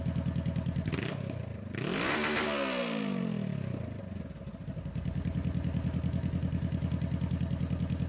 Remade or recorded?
recorded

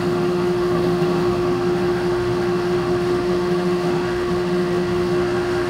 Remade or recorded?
remade